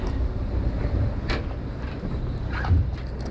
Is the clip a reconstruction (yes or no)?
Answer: no